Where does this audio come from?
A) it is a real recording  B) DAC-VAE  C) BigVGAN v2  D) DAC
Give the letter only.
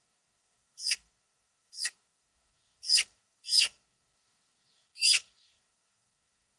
D